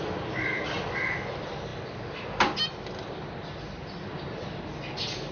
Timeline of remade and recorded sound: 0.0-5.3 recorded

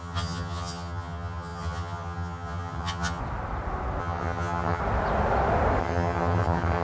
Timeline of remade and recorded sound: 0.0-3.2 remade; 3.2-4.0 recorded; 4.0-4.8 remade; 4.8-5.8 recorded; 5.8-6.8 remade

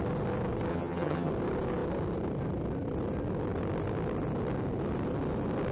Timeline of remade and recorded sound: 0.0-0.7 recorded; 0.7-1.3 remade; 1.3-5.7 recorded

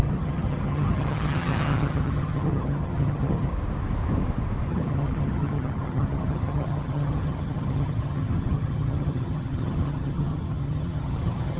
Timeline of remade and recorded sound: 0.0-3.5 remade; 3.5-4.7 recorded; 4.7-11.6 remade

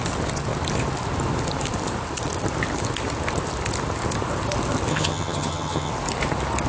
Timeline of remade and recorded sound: 0.0-4.9 recorded; 4.9-5.9 remade; 5.9-6.7 recorded

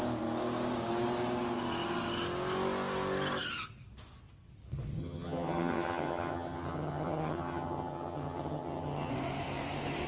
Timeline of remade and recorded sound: 0.0-5.0 recorded; 5.0-9.1 remade; 9.1-10.1 recorded